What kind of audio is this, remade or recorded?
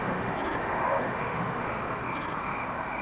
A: remade